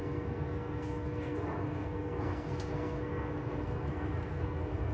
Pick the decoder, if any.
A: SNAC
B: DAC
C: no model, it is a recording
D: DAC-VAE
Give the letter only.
A